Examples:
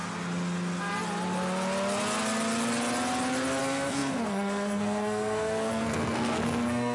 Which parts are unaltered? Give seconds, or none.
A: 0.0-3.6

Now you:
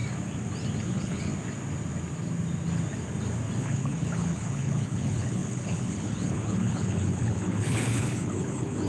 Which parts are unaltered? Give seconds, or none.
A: 0.0-0.8; 1.3-3.6